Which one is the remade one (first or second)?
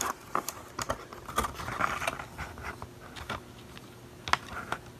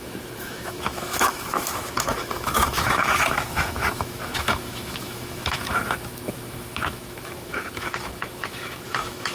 second